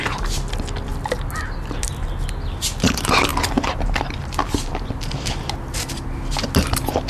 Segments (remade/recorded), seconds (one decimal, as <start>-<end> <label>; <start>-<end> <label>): 0.0-7.1 recorded